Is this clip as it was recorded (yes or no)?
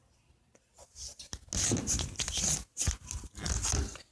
yes